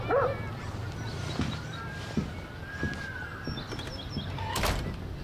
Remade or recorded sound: recorded